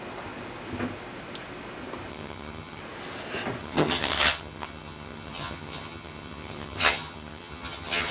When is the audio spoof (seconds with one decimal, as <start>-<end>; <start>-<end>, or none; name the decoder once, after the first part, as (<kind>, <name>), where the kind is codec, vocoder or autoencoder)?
2.1-2.8 (vocoder, HiFi-GAN); 3.6-8.1